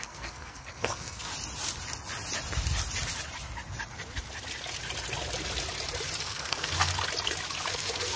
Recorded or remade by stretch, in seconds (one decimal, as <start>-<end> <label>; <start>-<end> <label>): 0.0-1.3 remade; 1.3-6.2 recorded; 6.2-6.9 remade; 6.9-7.7 recorded; 7.7-8.2 remade

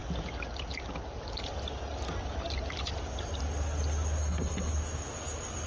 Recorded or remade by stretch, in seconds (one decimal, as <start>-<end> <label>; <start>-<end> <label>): 0.0-4.2 recorded; 4.2-4.7 remade; 4.7-5.7 recorded

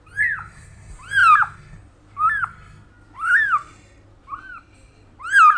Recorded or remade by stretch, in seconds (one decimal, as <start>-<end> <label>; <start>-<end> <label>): 0.0-5.6 recorded

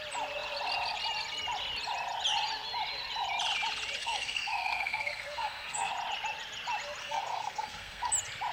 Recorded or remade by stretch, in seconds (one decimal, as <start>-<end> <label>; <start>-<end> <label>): 0.0-4.0 recorded; 4.0-5.9 remade; 5.9-7.0 recorded; 7.0-8.1 remade; 8.1-8.5 recorded